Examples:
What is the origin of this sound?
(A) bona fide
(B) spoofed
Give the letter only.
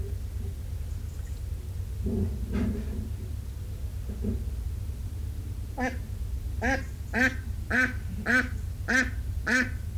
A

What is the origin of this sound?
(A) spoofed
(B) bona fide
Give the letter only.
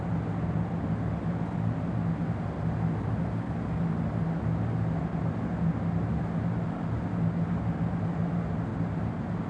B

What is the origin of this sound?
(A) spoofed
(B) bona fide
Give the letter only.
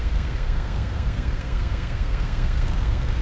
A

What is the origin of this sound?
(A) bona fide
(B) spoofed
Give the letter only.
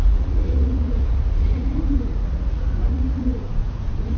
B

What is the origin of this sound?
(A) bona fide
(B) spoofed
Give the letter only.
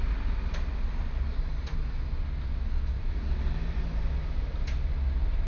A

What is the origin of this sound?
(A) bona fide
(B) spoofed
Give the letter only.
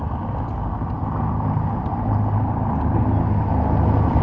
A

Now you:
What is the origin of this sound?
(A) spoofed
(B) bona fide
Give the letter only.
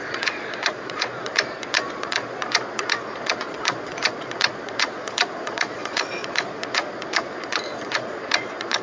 A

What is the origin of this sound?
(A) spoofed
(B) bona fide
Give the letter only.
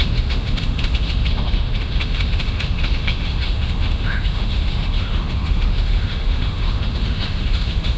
A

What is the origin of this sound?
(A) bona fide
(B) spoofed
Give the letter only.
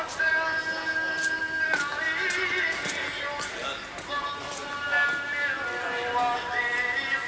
A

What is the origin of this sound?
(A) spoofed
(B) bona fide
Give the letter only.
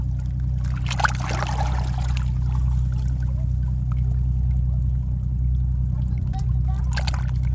B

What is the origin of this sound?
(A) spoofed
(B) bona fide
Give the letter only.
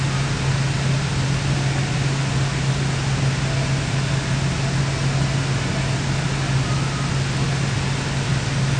B